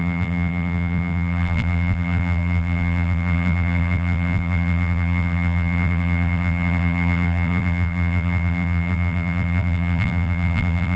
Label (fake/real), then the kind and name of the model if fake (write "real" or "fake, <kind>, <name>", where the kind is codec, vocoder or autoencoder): fake, vocoder, BigVGAN v2